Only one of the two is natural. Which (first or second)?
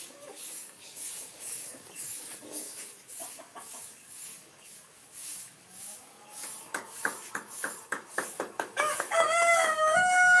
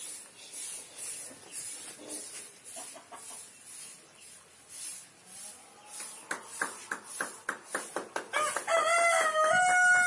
second